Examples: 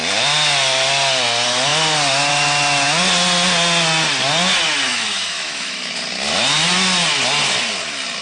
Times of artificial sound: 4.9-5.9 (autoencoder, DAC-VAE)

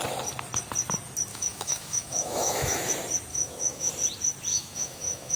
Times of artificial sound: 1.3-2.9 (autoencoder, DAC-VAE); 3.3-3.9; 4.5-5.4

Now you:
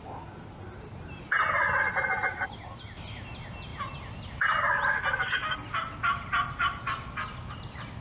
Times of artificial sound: none

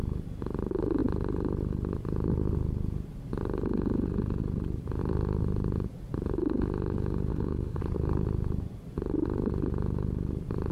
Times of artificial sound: 7.3-7.8 (autoencoder, DAC-VAE)

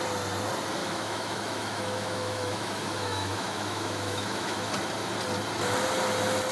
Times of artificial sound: 0.8-4.7 (autoencoder, DAC-VAE)

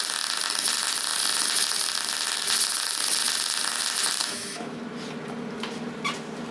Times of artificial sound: 4.2-4.8 (autoencoder, DAC-VAE)

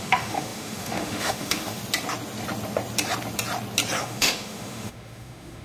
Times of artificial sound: 0.0-1.8 (autoencoder, DAC-VAE); 4.0-5.6

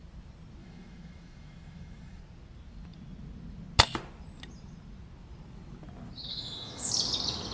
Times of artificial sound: 0.6-2.2 (autoencoder, DAC-VAE); 6.3-6.9